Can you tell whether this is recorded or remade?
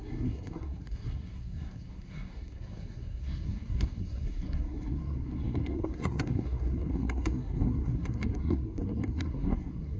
remade